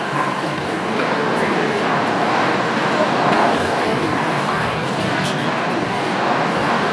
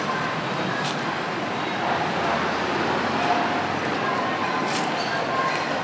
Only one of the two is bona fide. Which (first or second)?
second